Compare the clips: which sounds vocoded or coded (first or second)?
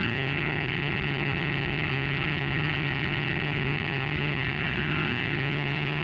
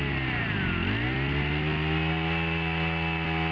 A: first